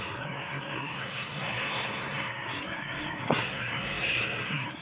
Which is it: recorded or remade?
remade